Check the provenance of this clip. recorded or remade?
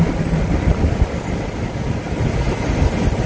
recorded